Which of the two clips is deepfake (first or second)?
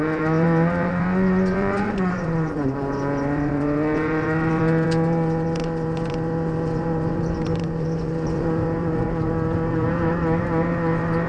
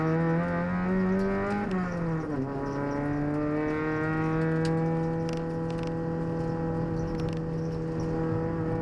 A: first